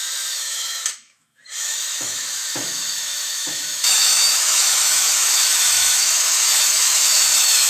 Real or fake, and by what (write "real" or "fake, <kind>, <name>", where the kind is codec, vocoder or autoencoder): fake, autoencoder, DAC-VAE